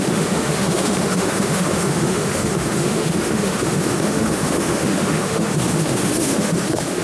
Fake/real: fake